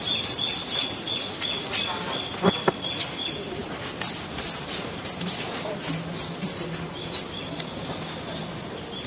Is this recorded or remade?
recorded